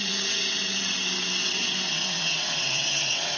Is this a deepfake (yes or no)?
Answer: yes